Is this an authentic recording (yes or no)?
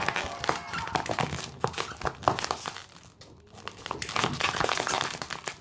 yes